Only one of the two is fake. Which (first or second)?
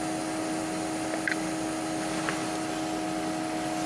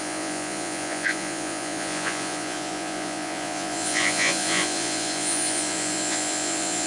second